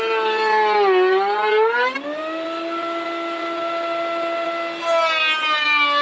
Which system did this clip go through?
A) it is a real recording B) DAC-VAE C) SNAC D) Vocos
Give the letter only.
A